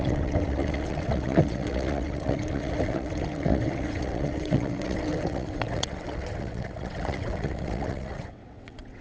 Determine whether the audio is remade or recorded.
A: remade